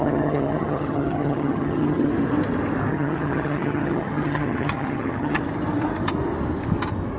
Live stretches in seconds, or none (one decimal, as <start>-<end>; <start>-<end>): 2.1-2.9; 5.4-7.2

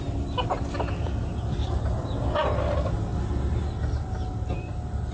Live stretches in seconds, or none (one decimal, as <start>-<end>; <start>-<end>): 0.0-5.1

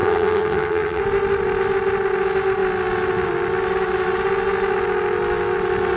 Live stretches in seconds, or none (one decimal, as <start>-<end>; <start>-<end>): 1.0-6.0

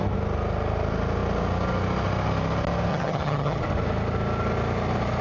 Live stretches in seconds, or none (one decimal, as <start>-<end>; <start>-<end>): 0.0-2.9; 3.6-5.2

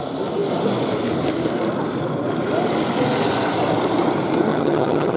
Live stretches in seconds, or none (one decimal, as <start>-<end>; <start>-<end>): 0.0-4.5

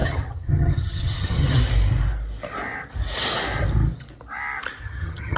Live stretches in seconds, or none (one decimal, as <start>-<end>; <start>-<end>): 1.6-4.8

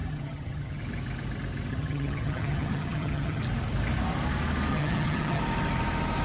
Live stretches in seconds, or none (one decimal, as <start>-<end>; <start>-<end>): 0.8-1.7; 3.4-4.7; 5.4-6.2